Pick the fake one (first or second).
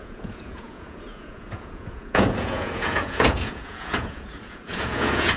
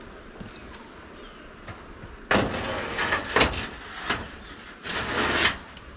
first